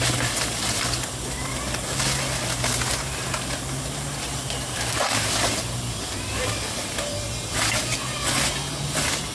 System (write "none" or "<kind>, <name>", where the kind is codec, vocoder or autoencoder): none